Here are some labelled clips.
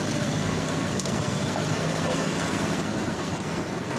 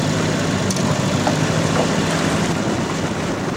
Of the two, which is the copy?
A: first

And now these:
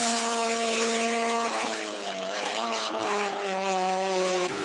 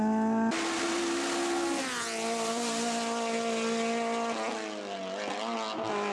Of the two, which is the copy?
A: first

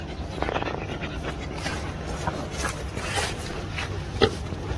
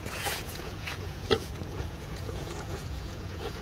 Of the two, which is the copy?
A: second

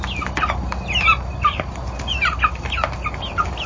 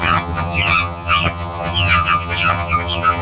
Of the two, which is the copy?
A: second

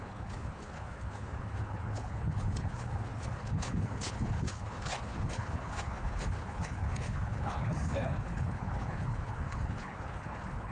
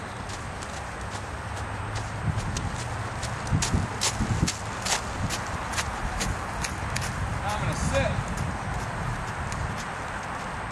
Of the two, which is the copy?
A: first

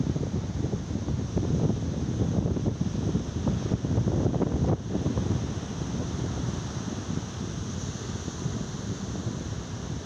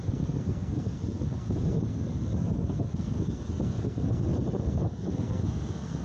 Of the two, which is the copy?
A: second